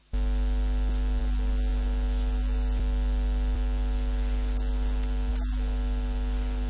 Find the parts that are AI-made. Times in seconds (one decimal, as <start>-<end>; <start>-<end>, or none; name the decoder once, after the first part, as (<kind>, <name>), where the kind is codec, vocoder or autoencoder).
none